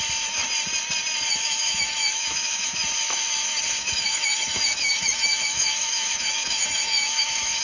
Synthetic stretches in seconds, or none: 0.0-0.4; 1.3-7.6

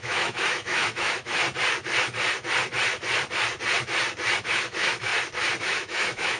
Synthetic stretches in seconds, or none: 0.0-1.4; 4.4-5.1; 5.6-6.4

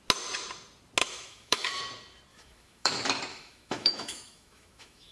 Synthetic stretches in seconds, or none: 1.0-1.8; 2.3-2.9; 3.3-5.1

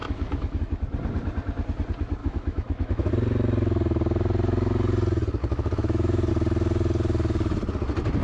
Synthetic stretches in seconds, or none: 0.0-0.6; 2.2-3.1; 5.4-6.3

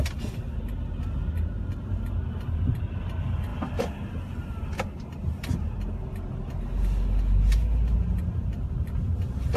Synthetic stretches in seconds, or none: none

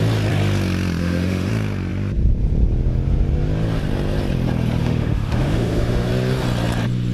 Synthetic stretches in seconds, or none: 1.0-1.5; 4.8-6.1

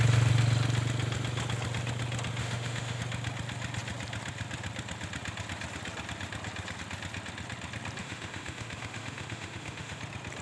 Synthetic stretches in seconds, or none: 2.4-3.0; 8.0-10.0